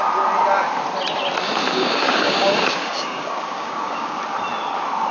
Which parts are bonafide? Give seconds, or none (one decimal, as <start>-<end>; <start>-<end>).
0.0-1.7; 4.2-5.1